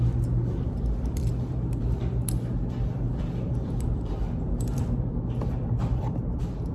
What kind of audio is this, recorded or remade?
remade